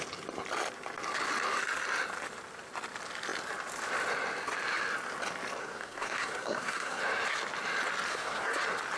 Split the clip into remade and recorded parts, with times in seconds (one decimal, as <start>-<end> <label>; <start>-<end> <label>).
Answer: 0.0-5.6 recorded; 5.6-7.0 remade; 7.0-8.1 recorded; 8.1-8.6 remade; 8.6-9.0 recorded